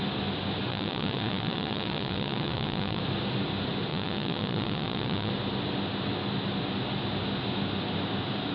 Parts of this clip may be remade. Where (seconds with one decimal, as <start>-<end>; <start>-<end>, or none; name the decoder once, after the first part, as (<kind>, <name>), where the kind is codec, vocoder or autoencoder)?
0.7-3.0 (vocoder, WaveNeXt); 3.9-5.3